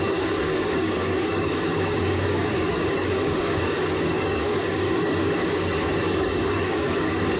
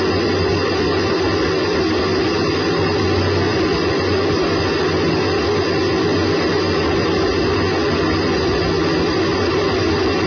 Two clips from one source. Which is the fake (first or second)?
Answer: first